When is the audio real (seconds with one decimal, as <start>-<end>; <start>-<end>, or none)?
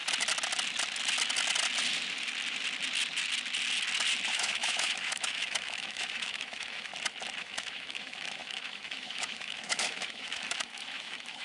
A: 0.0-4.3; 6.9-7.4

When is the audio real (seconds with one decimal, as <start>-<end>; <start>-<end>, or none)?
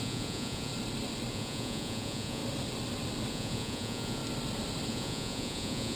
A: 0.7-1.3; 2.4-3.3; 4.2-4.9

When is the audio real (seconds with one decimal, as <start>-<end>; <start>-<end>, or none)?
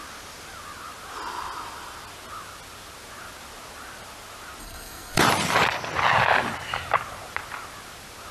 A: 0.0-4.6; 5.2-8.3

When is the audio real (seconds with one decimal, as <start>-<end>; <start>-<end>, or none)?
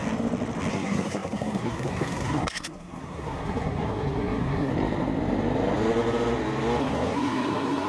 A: 0.0-0.7; 4.7-6.8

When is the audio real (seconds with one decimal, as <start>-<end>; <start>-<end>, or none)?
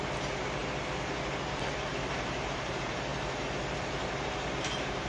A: 0.6-1.7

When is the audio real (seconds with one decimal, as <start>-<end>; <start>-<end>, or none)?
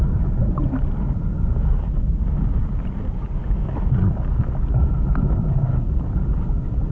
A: 0.0-6.9